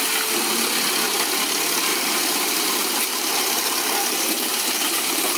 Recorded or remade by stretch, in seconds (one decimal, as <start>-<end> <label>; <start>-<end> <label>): 0.0-1.9 recorded; 1.9-5.4 remade